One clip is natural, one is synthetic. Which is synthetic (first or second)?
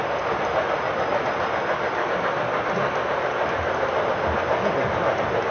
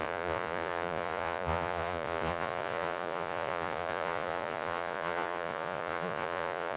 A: second